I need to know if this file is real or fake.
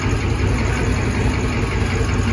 real